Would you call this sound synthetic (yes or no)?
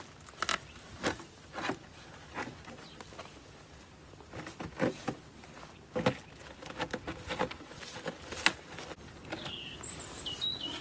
no